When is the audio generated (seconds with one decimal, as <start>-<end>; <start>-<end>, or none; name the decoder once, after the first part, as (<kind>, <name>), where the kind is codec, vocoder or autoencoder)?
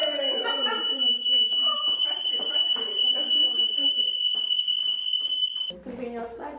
0.0-4.0 (vocoder, BigVGAN v2)